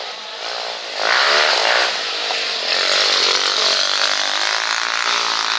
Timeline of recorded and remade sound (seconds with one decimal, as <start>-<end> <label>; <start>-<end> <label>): 0.0-5.6 remade